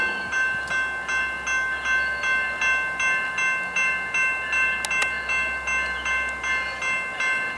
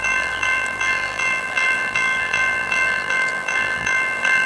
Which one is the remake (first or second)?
second